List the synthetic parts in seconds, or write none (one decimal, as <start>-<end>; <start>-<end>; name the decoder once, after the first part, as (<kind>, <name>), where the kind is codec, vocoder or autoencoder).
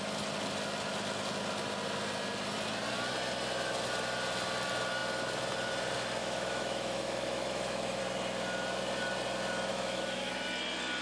6.2-8.0 (autoencoder, DAC-VAE); 9.7-10.3